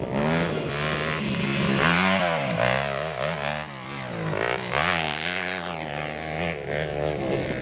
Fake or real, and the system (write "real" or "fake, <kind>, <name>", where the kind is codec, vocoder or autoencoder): real